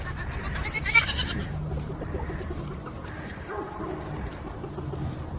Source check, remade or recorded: remade